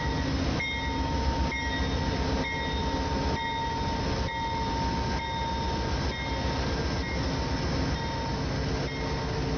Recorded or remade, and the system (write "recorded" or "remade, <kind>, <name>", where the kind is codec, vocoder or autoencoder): recorded